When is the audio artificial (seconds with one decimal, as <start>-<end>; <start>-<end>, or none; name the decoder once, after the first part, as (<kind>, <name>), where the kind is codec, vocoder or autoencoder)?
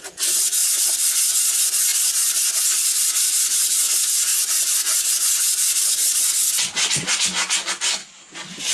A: 0.0-1.9 (vocoder, Vocos); 3.3-8.0